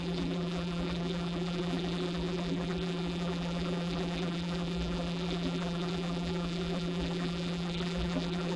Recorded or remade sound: remade